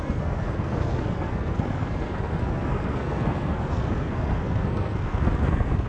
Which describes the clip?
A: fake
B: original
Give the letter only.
A